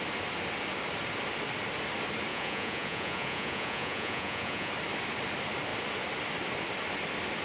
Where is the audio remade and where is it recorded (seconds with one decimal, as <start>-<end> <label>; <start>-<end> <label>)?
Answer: 0.0-2.3 recorded; 2.3-4.7 remade; 4.7-7.4 recorded